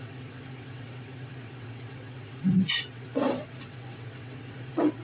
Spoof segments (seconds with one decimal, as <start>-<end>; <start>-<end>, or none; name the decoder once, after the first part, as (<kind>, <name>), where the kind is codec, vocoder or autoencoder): 0.0-5.0 (vocoder, WaveNeXt)